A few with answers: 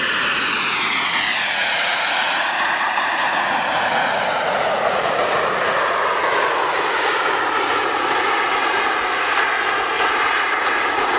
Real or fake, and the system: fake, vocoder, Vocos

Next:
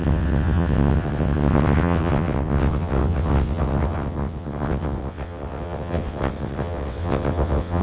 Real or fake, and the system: fake, vocoder, WaveNeXt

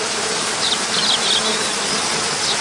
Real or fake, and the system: real